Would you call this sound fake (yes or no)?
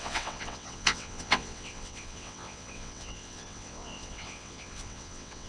yes